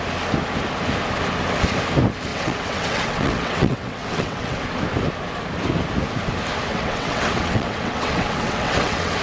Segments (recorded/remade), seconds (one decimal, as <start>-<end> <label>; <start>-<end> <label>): 0.0-2.3 recorded; 2.3-4.6 remade; 4.6-6.7 recorded; 6.7-9.2 remade